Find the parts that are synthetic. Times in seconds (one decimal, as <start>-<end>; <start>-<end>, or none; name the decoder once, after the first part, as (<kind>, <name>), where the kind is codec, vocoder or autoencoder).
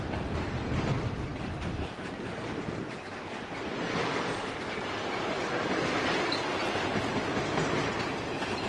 1.3-2.1 (vocoder, BigVGAN v2)